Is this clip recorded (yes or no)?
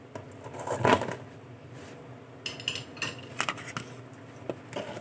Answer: yes